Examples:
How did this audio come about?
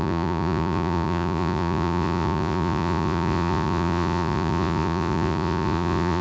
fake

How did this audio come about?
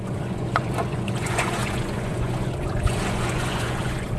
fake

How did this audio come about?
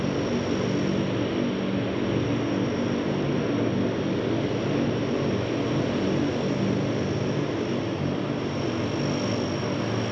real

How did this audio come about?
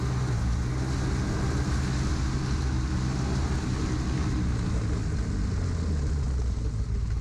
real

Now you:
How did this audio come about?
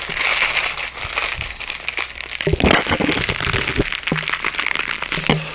real